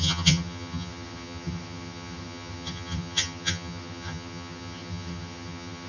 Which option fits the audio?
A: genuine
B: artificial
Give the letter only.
B